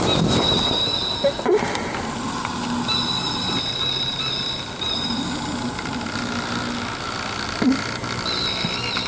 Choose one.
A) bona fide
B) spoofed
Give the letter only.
A